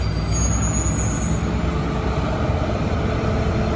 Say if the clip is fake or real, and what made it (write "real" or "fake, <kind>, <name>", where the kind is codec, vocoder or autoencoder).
real